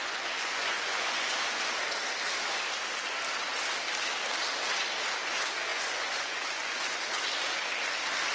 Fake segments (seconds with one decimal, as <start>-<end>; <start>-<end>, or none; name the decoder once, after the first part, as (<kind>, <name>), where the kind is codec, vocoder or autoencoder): 0.0-1.6 (vocoder, Vocos); 5.7-7.1